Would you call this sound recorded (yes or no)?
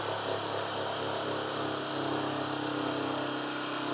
yes